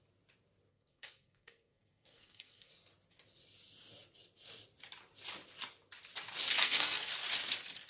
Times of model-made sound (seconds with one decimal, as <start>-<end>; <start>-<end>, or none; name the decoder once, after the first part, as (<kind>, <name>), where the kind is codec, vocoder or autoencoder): 0.7-2.7 (codec, SNAC); 6.6-7.1